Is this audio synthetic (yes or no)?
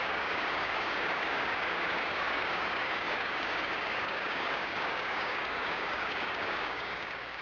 yes